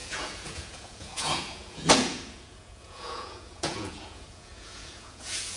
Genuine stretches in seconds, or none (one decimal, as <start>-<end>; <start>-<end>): none